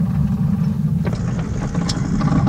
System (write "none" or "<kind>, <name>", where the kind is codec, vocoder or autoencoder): none